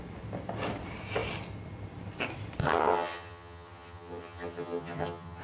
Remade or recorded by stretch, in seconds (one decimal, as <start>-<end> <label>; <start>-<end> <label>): 0.0-2.6 recorded; 2.6-5.4 remade